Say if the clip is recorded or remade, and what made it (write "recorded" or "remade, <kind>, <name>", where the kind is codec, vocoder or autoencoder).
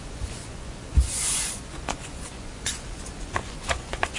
remade, vocoder, Vocos